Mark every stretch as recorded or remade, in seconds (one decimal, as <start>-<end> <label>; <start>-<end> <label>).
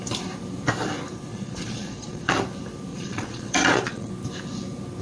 0.0-1.3 recorded; 1.3-2.4 remade; 2.4-2.9 recorded; 2.9-4.1 remade; 4.1-5.0 recorded